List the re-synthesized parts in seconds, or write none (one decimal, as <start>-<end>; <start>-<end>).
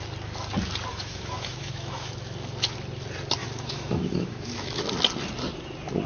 0.9-2.1; 3.4-4.8